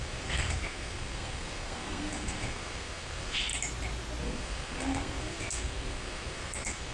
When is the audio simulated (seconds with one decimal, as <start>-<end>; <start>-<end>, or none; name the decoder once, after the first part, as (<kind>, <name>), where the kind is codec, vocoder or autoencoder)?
0.0-3.5 (codec, SNAC); 4.2-6.9